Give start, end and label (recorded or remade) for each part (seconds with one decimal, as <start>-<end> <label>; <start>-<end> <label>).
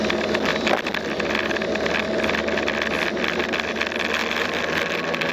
0.0-4.2 recorded; 4.2-5.3 remade